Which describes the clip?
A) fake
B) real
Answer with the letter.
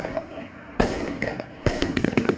A